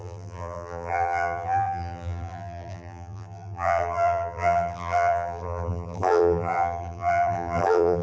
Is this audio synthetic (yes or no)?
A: yes